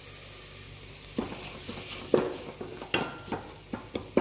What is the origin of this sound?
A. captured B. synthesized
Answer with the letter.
A